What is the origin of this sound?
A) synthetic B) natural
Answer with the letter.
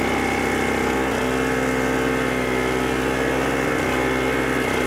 B